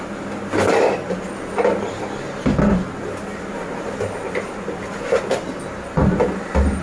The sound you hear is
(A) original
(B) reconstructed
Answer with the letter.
A